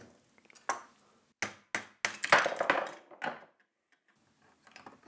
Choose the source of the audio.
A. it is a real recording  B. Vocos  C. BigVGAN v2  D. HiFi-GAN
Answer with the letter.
A